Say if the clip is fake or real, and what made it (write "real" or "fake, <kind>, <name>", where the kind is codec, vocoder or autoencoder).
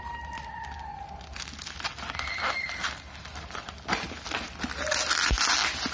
real